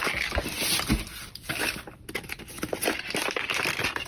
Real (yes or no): yes